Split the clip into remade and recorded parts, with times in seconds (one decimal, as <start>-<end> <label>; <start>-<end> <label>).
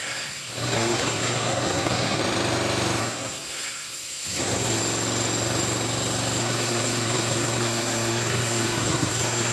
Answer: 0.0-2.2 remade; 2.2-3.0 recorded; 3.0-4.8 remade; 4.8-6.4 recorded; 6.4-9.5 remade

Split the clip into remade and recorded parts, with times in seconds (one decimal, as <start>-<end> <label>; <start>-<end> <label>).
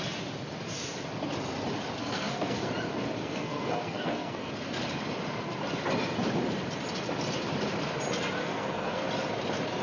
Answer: 0.0-2.0 recorded; 2.0-2.7 remade; 2.7-3.2 recorded; 3.2-4.5 remade; 4.5-8.4 recorded; 8.4-9.1 remade; 9.1-9.8 recorded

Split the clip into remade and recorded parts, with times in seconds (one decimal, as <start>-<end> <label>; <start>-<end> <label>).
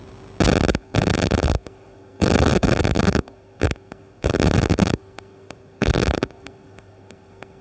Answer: 0.0-0.7 recorded; 0.7-7.6 remade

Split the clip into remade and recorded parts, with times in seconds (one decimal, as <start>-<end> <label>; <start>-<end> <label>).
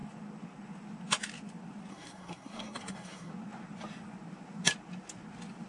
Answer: 0.0-1.9 recorded; 1.9-3.3 remade; 3.3-5.7 recorded